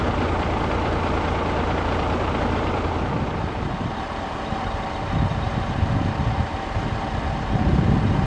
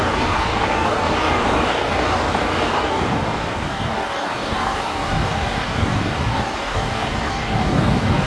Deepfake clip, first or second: second